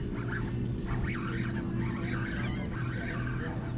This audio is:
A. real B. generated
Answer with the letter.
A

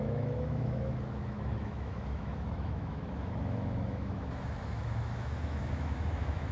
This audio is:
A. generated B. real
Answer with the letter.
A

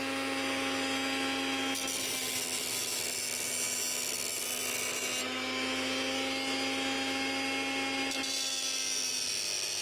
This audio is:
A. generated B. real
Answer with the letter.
B